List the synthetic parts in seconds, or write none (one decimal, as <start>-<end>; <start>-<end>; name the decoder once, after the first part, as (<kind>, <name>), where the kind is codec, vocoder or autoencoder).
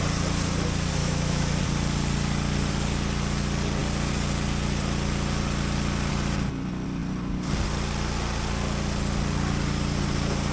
1.0-1.5 (autoencoder, DAC-VAE)